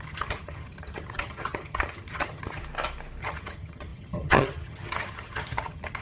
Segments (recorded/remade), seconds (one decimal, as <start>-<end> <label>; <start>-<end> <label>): 0.0-2.6 remade; 2.6-3.2 recorded; 3.2-6.0 remade